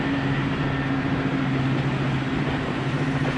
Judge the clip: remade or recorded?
recorded